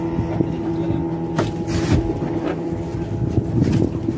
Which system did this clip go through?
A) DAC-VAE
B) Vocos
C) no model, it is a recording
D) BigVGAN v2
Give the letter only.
C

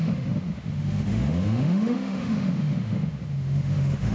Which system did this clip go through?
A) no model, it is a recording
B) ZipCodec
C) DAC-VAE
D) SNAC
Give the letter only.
C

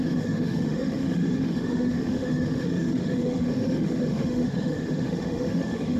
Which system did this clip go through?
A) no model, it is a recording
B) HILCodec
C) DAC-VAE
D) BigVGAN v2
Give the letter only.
C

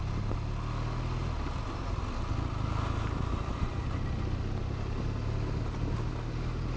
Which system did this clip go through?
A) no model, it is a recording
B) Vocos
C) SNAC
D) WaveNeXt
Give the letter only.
A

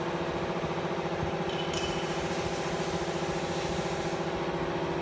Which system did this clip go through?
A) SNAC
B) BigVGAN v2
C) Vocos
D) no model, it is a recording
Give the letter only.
D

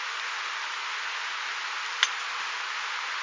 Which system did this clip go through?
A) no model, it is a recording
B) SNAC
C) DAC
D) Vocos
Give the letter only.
A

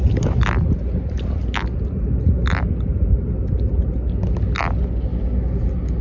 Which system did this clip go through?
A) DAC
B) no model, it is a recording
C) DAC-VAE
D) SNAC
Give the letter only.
B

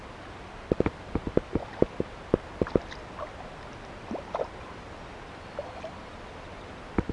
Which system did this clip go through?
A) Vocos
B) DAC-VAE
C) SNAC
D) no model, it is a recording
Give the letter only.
D